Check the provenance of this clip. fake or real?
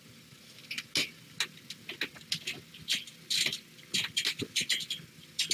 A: real